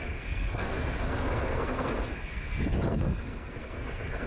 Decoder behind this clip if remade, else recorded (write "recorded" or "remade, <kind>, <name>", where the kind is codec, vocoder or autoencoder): remade, codec, SNAC